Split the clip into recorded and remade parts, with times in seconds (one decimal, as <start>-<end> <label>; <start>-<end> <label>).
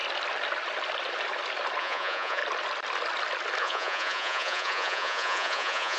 0.0-1.8 recorded; 1.8-2.4 remade; 2.4-3.6 recorded; 3.6-6.0 remade